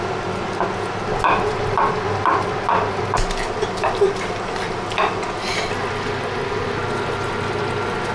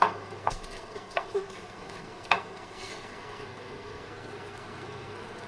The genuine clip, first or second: first